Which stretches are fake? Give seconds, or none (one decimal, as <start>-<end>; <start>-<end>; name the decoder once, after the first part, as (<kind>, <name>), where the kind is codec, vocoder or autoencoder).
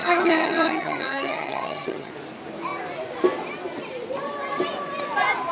0.0-2.1 (vocoder, HiFi-GAN)